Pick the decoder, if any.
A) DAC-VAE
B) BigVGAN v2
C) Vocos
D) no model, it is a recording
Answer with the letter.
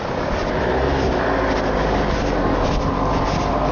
D